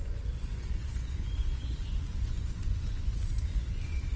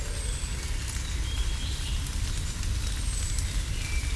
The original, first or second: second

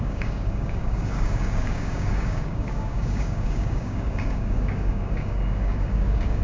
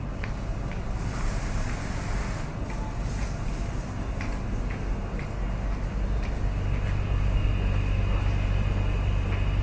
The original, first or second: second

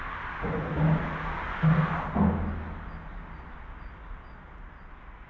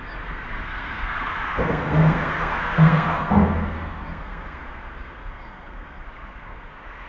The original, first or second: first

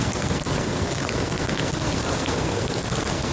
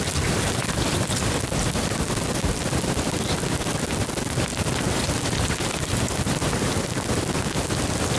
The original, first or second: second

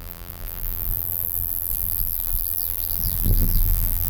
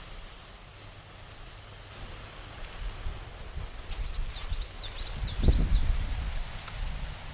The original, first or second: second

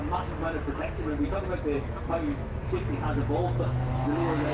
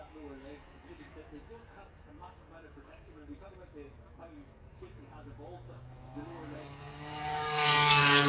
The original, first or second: first